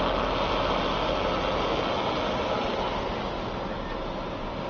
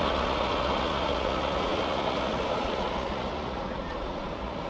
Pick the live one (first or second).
first